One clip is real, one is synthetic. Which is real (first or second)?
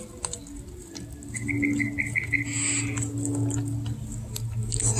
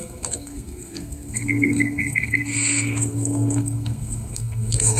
first